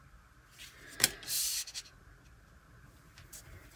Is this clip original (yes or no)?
yes